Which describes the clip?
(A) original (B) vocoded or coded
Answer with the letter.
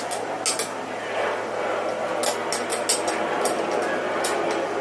A